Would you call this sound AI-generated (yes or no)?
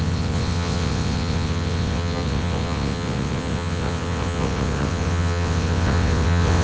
yes